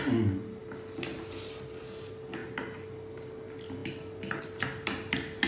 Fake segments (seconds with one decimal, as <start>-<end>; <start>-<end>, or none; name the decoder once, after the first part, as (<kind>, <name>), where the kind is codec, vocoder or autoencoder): none